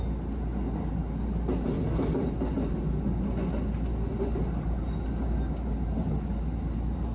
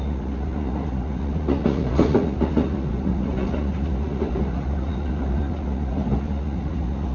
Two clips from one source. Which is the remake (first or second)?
second